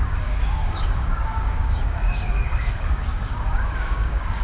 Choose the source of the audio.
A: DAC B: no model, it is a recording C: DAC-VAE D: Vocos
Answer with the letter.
A